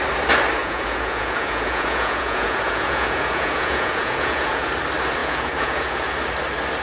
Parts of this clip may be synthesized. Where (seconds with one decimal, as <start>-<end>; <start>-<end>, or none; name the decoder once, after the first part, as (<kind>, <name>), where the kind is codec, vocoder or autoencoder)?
0.6-4.7 (vocoder, Vocos); 5.2-6.1